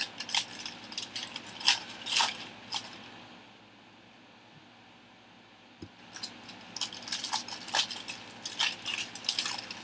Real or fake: real